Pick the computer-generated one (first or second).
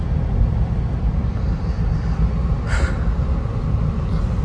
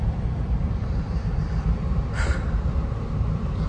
second